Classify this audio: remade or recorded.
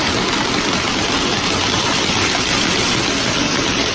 recorded